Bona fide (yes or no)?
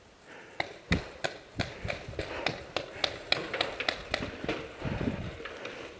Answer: yes